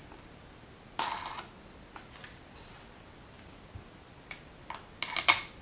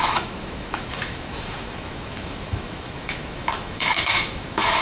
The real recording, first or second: first